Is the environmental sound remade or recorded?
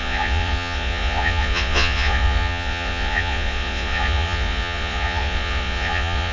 remade